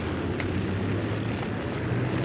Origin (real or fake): real